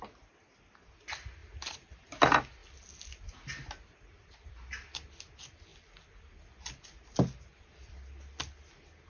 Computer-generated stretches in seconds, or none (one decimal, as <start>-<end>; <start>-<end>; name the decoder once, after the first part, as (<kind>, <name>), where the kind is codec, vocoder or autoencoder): none